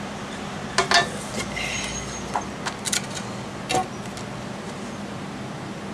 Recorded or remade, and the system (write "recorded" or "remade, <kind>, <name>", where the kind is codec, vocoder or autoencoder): recorded